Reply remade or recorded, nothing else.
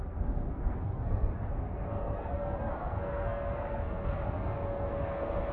remade